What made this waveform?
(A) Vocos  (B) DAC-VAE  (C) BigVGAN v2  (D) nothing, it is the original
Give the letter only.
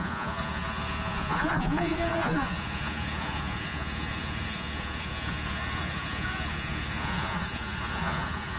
A